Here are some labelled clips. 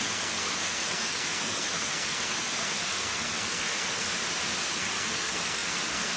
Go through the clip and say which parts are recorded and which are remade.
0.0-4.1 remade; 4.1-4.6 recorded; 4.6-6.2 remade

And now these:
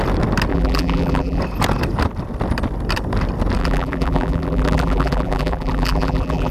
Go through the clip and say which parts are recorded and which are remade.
0.0-0.5 recorded; 0.5-1.4 remade; 1.4-3.6 recorded; 3.6-6.5 remade

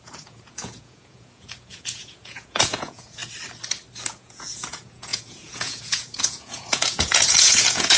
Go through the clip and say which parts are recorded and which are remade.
0.0-3.2 remade; 3.2-4.1 recorded; 4.1-8.0 remade

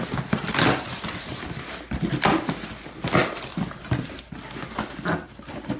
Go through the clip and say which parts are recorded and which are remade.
0.0-5.8 recorded

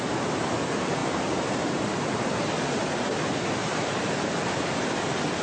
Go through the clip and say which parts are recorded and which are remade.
0.0-1.0 recorded; 1.0-2.2 remade; 2.2-3.6 recorded; 3.6-4.3 remade; 4.3-5.4 recorded

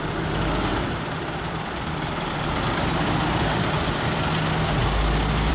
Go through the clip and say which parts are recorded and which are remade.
0.0-0.7 recorded; 0.7-4.0 remade; 4.0-5.5 recorded